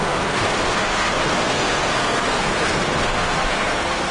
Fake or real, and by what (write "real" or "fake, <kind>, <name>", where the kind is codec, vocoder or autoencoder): fake, codec, SNAC